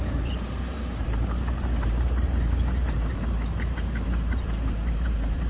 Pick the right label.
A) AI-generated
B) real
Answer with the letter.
A